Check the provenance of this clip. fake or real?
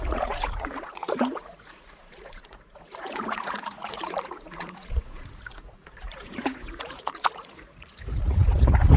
fake